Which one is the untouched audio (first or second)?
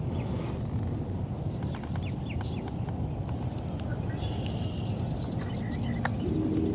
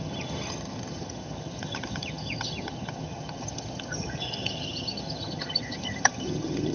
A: first